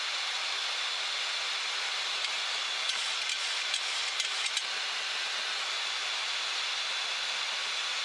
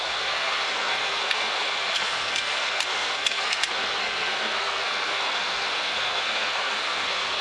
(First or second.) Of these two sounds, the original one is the first